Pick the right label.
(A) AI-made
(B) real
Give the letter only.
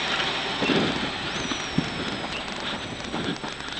B